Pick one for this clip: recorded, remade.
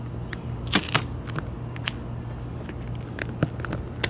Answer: recorded